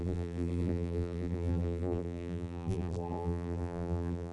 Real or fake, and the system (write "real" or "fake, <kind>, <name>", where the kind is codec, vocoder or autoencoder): fake, vocoder, BigVGAN v2